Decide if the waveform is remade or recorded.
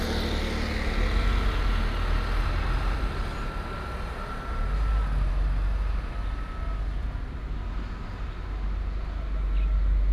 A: recorded